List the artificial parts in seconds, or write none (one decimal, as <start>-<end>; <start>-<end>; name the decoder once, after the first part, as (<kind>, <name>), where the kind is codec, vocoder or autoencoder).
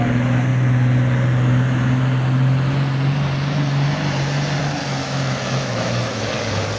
5.0-6.3 (autoencoder, DAC-VAE)